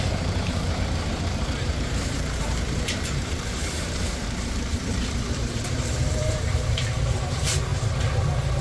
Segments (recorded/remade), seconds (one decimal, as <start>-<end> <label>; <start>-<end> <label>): 0.0-7.7 remade; 7.7-8.6 recorded